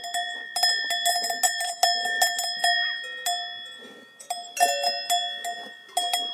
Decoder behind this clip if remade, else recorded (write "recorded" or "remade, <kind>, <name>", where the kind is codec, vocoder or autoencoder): recorded